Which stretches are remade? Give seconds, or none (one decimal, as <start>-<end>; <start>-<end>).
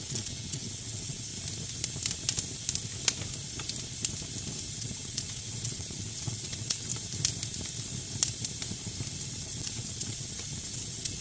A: 0.0-1.3; 4.7-6.9; 9.3-11.2